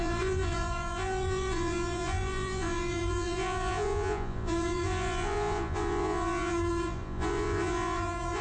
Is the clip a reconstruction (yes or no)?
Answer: yes